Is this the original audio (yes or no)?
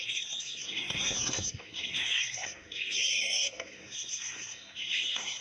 no